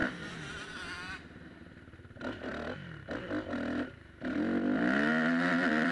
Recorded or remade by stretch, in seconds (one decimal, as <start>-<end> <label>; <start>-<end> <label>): 0.0-2.5 remade; 2.5-5.1 recorded; 5.1-5.9 remade